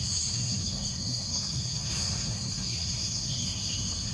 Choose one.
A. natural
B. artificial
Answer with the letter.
B